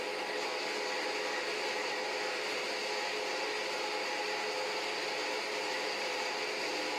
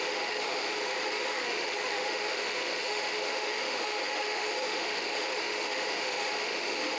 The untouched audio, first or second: first